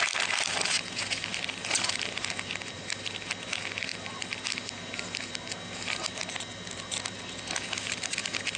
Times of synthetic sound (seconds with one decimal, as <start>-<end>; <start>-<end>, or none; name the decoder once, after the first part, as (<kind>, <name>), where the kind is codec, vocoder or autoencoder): none